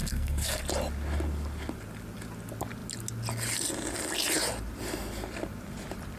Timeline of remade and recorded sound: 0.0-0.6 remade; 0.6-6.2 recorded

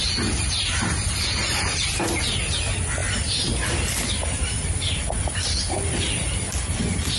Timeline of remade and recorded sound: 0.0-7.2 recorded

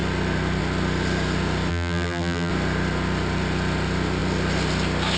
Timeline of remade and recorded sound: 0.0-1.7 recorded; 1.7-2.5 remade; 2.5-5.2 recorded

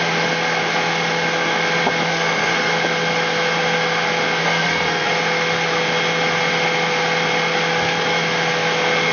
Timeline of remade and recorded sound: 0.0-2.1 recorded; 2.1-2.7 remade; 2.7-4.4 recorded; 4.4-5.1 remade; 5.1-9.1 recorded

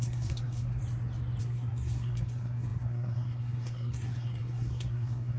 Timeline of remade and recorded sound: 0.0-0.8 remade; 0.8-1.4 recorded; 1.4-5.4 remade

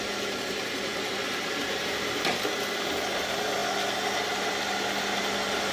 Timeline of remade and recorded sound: 0.0-5.7 recorded

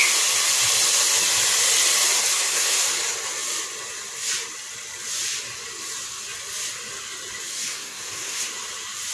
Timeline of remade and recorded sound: 0.0-2.3 recorded; 2.3-2.8 remade; 2.8-7.5 recorded; 7.5-8.5 remade; 8.5-9.1 recorded